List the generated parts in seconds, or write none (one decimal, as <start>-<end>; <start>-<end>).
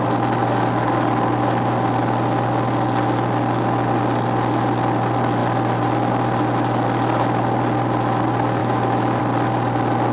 8.6-9.2